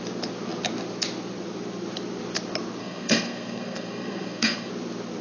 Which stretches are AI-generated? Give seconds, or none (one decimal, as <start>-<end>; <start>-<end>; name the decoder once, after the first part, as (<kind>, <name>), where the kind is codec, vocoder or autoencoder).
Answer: 2.8-4.7 (codec, SNAC)